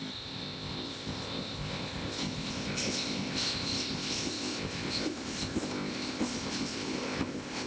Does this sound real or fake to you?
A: fake